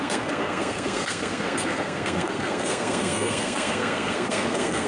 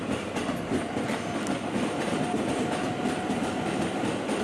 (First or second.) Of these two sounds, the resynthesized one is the first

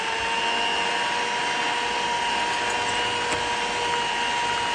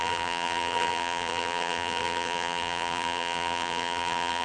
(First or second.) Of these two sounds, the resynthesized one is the second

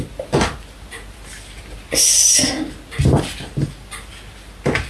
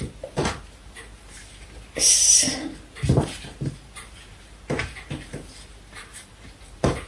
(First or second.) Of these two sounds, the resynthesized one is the second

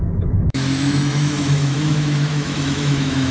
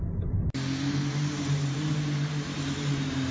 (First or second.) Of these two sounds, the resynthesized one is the first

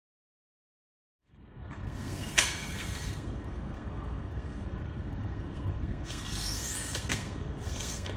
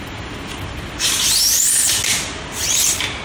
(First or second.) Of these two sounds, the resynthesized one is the first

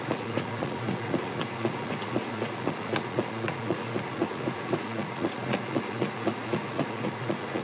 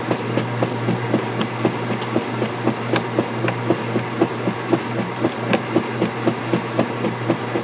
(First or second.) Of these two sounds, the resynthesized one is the first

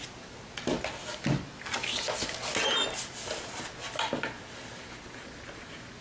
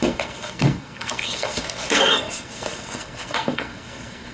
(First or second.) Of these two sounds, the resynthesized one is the second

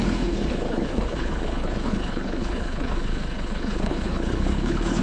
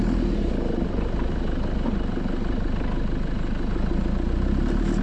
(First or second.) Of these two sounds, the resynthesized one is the first